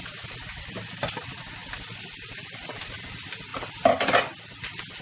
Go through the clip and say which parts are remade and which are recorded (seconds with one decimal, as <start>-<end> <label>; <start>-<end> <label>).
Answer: 0.0-5.0 recorded